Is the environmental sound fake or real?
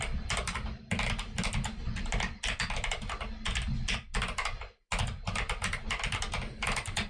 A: real